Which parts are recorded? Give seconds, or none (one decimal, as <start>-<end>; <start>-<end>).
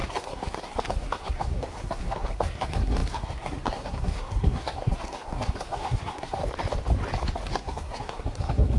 6.4-7.5